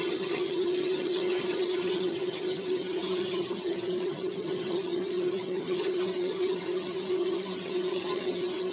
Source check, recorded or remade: remade